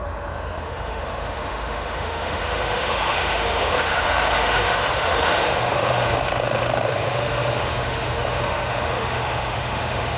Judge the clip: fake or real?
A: fake